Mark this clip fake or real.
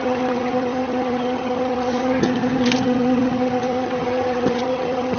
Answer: fake